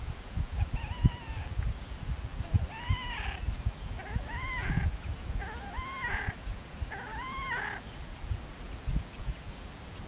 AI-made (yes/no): yes